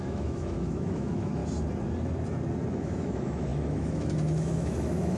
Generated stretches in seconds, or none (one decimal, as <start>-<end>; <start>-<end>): 0.0-1.4; 2.7-5.2